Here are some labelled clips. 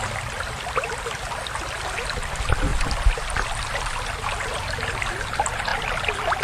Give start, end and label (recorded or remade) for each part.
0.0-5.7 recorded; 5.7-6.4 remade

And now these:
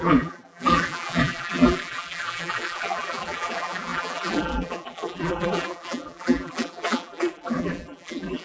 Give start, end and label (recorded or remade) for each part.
0.0-8.4 remade

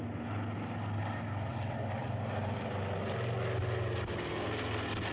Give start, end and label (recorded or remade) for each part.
0.0-5.1 recorded

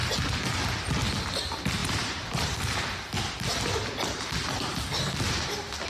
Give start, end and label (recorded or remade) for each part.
0.0-1.8 recorded; 1.8-3.3 remade; 3.3-5.9 recorded

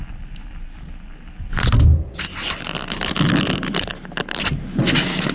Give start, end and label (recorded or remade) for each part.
0.0-2.3 recorded; 2.3-3.9 remade; 3.9-5.3 recorded

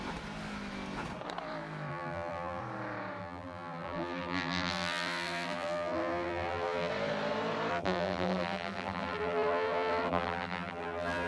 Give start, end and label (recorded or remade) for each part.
0.0-1.9 recorded; 1.9-2.6 remade; 2.6-3.2 recorded; 3.2-6.9 remade; 6.9-7.7 recorded; 7.7-11.3 remade